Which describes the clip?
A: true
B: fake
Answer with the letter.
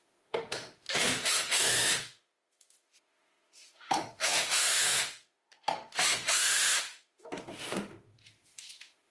B